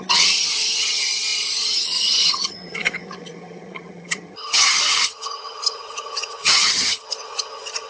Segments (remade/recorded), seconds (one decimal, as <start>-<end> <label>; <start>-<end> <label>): 0.0-7.9 remade

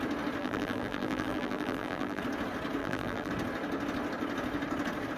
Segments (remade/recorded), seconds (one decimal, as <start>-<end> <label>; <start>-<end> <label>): 0.0-0.4 recorded; 0.4-2.2 remade; 2.2-2.8 recorded; 2.8-3.3 remade; 3.3-5.2 recorded